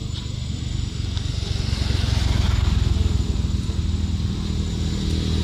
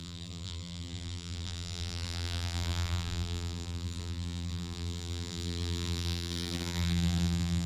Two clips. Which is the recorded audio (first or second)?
first